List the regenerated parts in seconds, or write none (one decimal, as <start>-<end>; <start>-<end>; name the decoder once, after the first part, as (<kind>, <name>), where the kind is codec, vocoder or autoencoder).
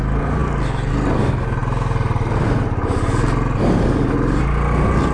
none